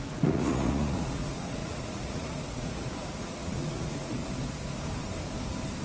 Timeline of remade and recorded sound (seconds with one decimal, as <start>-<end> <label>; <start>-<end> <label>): 0.0-4.2 remade; 4.2-5.8 recorded